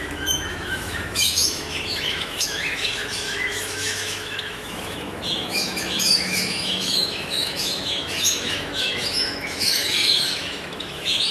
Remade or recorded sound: remade